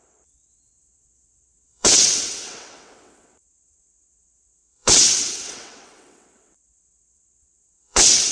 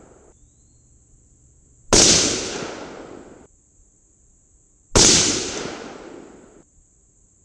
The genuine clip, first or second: second